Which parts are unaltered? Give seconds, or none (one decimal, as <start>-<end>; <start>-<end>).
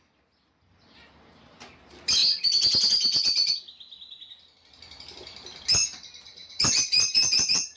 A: 0.0-6.4